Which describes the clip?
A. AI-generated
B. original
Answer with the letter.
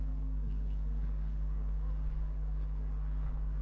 A